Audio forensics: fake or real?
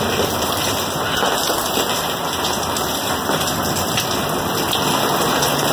real